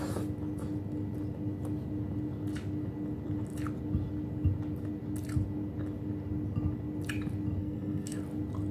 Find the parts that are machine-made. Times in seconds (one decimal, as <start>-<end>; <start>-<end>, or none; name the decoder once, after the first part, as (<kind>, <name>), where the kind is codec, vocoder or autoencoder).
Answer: 7.6-8.2 (codec, SNAC)